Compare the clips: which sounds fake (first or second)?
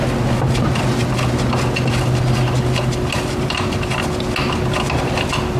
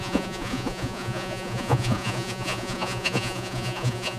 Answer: second